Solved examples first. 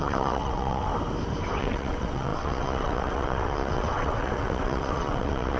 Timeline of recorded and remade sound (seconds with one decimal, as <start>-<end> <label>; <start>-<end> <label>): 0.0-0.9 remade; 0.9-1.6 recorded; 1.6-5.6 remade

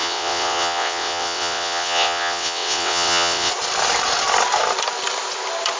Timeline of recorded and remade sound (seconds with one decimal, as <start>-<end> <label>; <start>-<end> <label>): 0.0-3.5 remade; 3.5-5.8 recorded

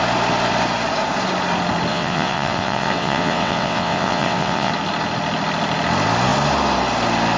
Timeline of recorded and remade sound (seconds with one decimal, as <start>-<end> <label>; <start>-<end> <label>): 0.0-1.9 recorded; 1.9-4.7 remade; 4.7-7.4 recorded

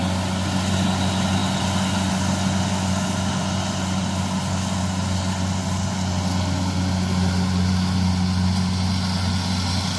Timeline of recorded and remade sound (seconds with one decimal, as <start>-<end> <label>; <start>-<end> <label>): 0.0-10.0 recorded